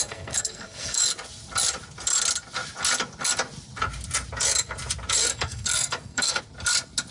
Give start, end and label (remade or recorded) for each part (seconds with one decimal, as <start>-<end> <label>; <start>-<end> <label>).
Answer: 0.0-1.0 remade; 1.0-5.2 recorded; 5.2-6.4 remade; 6.4-7.1 recorded